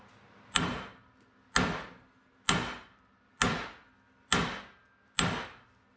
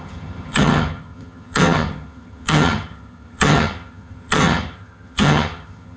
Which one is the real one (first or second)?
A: first